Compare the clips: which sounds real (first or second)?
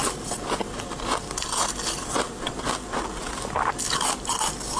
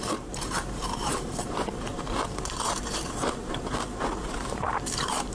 first